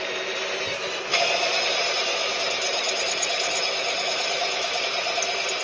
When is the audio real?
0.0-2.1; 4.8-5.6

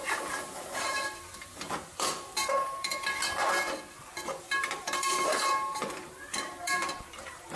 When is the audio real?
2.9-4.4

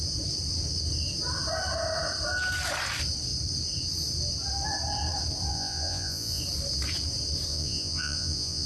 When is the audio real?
0.0-5.5; 6.4-7.5

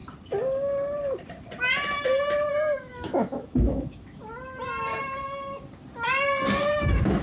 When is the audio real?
0.0-2.5; 4.2-6.6

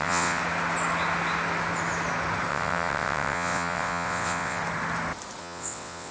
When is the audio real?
0.4-2.5; 4.6-5.4

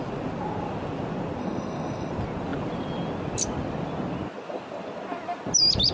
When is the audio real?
0.0-1.4; 2.1-5.9

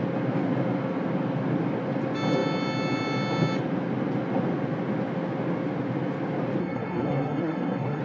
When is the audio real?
0.0-6.6

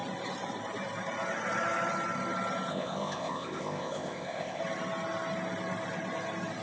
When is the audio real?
0.0-2.7; 4.6-6.6